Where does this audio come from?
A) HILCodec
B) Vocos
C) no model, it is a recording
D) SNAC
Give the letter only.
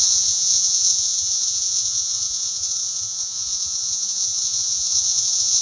B